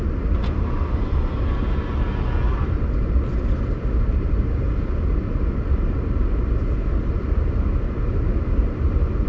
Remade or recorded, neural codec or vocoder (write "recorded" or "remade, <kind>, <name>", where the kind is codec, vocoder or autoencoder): recorded